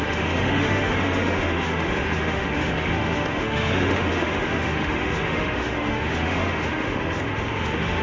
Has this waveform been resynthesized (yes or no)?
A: yes